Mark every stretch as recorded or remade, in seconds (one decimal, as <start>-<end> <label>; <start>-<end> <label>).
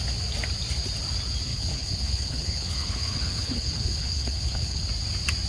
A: 0.0-1.5 recorded; 1.5-4.8 remade; 4.8-5.5 recorded